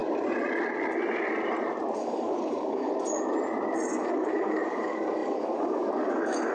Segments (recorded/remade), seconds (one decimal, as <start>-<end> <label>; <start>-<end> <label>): 0.0-2.0 recorded; 2.0-2.9 remade; 2.9-3.9 recorded; 3.9-6.5 remade